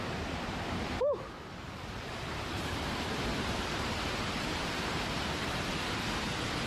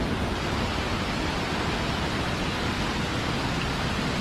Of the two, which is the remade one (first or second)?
first